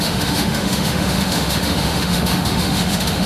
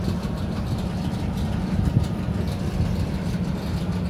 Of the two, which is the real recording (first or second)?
second